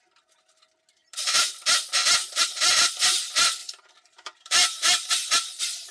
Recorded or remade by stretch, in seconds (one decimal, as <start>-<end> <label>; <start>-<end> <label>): 0.0-1.0 recorded; 1.0-1.6 remade; 1.6-2.2 recorded; 2.2-2.9 remade; 2.9-3.6 recorded; 3.6-4.9 remade; 4.9-5.9 recorded